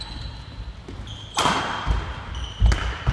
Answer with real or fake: real